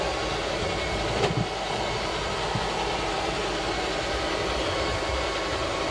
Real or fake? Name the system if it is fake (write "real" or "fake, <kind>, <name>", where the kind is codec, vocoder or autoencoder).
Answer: real